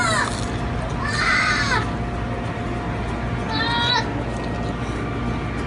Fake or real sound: real